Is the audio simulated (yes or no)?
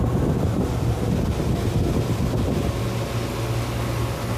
no